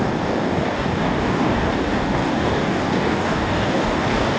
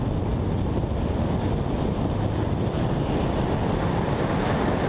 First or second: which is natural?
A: second